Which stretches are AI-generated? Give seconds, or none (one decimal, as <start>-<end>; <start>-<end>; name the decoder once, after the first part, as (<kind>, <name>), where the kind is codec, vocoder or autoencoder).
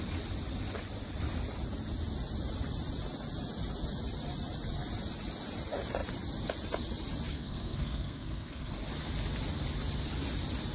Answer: 7.3-8.7 (codec, SNAC)